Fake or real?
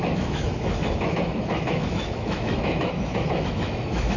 fake